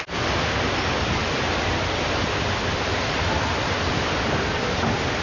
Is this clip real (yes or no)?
yes